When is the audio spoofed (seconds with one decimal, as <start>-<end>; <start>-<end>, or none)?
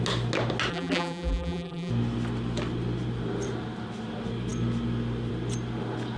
0.7-1.9